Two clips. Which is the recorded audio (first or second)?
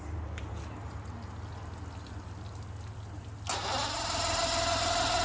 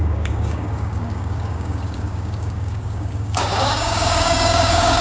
first